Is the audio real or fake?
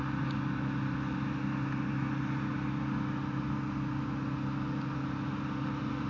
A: real